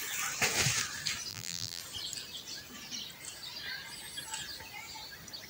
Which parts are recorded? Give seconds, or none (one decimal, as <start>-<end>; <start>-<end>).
0.0-1.3; 1.8-5.5